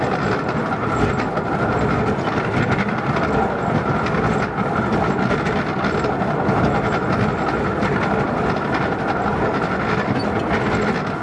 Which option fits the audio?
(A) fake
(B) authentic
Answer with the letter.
B